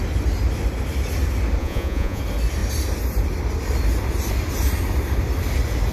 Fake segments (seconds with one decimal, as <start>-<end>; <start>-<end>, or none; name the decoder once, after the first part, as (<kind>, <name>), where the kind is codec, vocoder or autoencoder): 1.6-2.2 (vocoder, Vocos)